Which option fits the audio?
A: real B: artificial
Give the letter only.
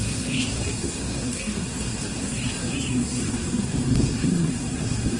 B